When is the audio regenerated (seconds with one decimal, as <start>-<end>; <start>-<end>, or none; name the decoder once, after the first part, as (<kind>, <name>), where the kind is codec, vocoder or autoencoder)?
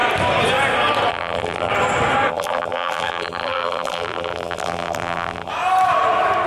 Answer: 1.1-1.7 (vocoder, BigVGAN v2); 2.3-5.5